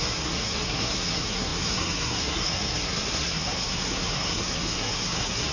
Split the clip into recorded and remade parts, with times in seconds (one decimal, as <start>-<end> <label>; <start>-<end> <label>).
0.0-5.5 remade